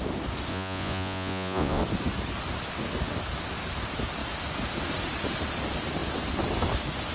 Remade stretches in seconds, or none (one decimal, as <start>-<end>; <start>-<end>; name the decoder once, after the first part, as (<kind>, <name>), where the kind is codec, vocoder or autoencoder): 0.5-1.8 (vocoder, Vocos)